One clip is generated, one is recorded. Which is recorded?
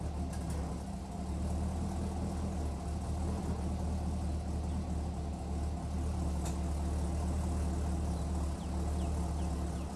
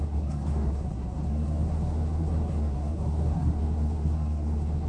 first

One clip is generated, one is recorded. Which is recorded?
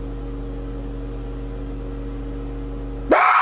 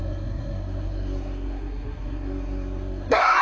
first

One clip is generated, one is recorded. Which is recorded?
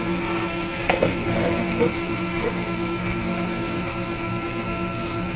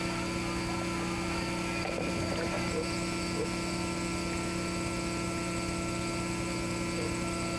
second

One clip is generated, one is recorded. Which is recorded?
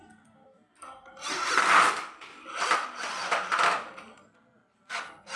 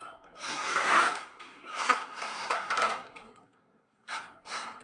first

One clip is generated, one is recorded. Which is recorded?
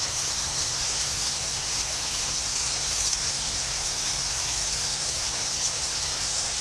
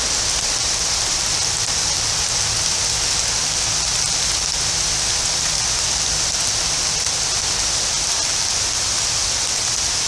second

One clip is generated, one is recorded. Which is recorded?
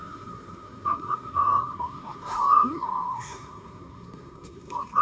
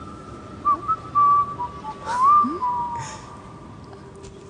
second